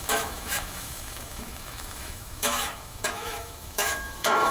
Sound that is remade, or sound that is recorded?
remade